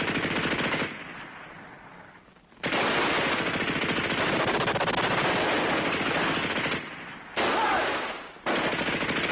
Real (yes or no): yes